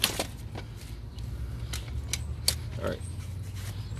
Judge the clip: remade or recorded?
recorded